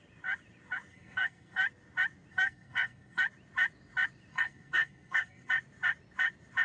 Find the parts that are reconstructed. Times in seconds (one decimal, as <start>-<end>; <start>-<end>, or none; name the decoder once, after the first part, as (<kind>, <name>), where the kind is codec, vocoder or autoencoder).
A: 0.9-1.6 (codec, SNAC); 2.3-3.2; 4.3-5.5